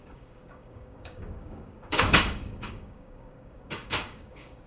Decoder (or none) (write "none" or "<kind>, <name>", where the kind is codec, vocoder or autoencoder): codec, DAC